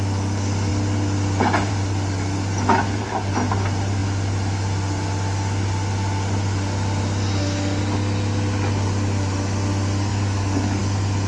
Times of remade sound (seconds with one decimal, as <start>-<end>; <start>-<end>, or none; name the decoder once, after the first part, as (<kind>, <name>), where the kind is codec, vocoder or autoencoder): 10.1-10.8 (codec, DAC)